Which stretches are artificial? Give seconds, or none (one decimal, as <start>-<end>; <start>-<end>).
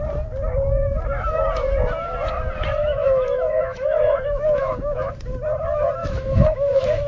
2.8-5.1; 6.0-7.1